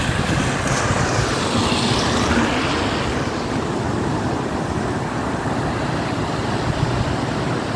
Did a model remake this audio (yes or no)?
no